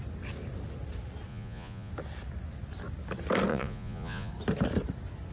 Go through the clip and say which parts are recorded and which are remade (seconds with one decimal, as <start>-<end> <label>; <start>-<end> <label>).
0.0-1.3 recorded; 1.3-1.9 remade; 1.9-3.5 recorded; 3.5-4.3 remade; 4.3-5.3 recorded